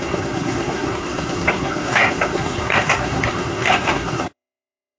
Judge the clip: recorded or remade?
remade